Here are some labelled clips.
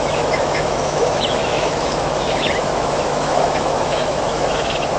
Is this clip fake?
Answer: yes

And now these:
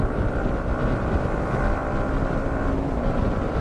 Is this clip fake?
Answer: no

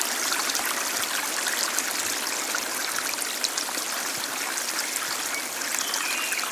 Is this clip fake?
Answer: no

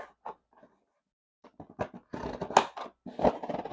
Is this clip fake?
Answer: no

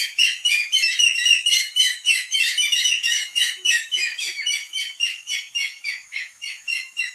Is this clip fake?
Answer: yes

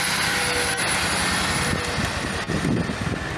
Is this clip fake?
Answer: no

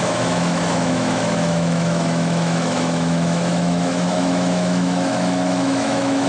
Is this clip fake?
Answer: yes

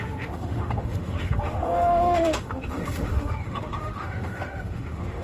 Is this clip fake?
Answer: yes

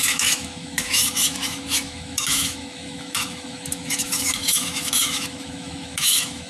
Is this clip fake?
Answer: yes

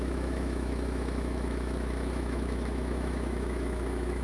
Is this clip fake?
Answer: yes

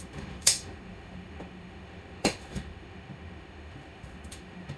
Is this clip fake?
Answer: yes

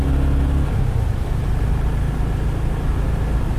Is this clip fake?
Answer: no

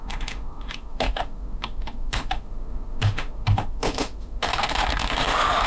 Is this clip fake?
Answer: yes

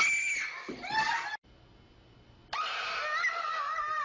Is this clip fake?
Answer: no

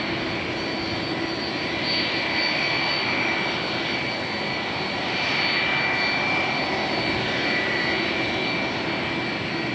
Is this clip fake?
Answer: no